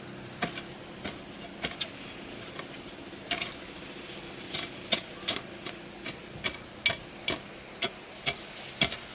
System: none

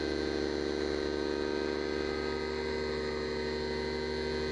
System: none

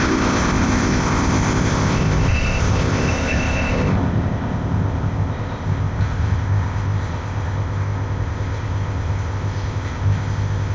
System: codec, ZipCodec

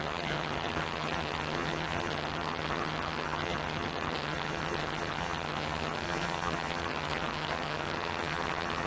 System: vocoder, HiFi-GAN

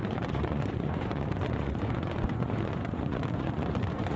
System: vocoder, Vocos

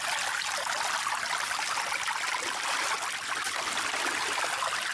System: none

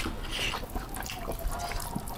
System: none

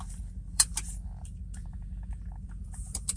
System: vocoder, BigVGAN v2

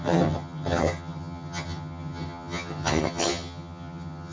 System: vocoder, HiFi-GAN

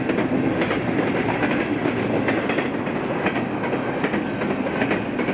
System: none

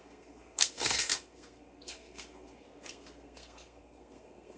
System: codec, SNAC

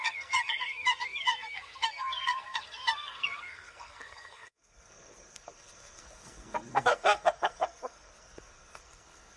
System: codec, SNAC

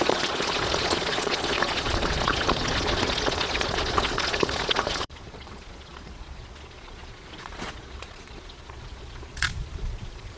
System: vocoder, Vocos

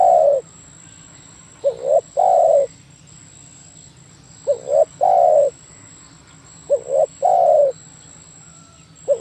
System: none